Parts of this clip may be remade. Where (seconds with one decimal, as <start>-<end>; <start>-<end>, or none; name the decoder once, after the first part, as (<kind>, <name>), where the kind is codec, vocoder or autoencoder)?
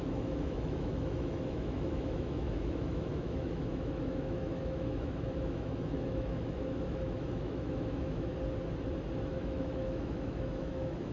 0.0-8.3 (autoencoder, DAC-VAE); 9.3-11.1